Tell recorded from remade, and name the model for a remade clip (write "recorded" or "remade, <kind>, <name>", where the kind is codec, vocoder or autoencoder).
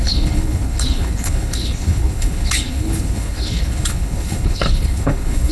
remade, codec, HILCodec